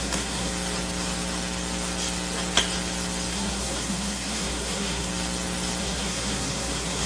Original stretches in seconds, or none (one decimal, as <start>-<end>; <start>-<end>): 0.5-3.3; 5.1-5.8